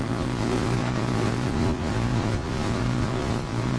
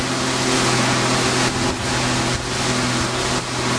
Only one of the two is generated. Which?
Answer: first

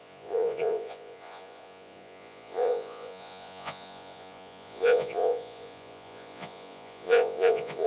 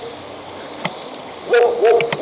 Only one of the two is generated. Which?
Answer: first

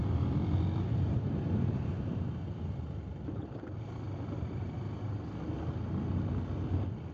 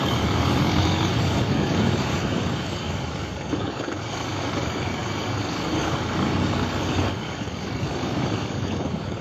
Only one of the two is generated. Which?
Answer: second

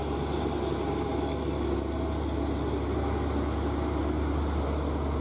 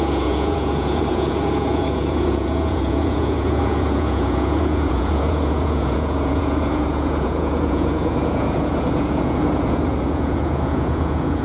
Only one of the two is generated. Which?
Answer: second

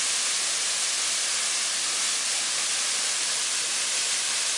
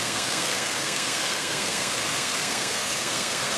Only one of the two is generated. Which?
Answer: second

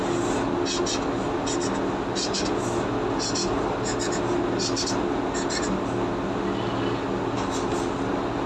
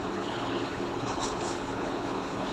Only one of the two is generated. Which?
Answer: second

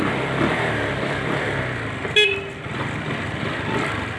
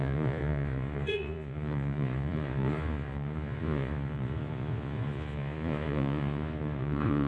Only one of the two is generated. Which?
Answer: second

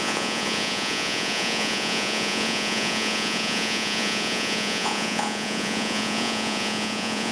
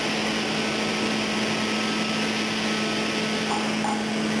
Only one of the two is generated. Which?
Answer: first